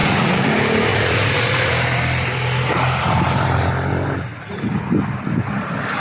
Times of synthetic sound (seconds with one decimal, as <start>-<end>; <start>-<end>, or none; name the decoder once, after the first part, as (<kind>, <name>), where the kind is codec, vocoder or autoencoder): 0.0-0.5 (vocoder, Vocos); 0.9-1.7